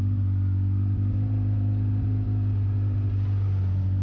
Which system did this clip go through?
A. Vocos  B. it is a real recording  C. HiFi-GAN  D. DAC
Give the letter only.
B